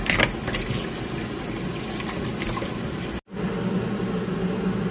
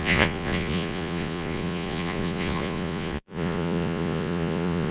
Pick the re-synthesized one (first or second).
second